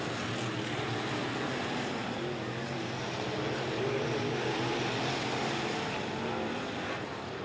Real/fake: real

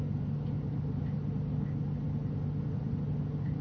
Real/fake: real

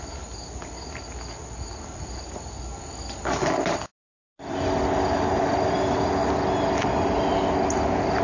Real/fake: real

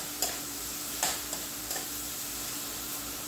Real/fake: fake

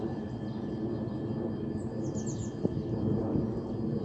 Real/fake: real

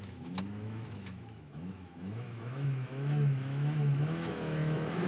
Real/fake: fake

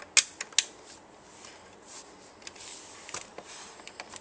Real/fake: real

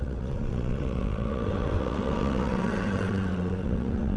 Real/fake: fake